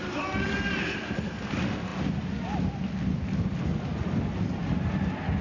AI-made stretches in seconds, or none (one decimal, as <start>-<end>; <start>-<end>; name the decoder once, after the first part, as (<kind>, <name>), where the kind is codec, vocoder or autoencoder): none